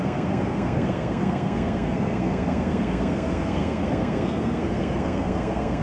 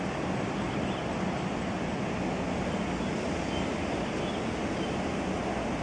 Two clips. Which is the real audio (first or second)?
second